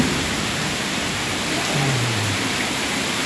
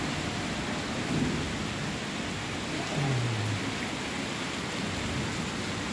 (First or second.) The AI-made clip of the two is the first